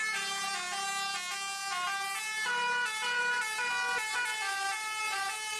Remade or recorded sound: recorded